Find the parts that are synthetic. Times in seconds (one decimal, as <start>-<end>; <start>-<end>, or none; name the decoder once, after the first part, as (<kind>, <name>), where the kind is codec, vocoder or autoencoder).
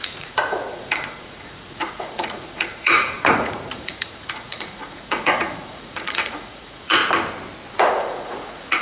0.0-7.0 (vocoder, Vocos); 7.7-8.8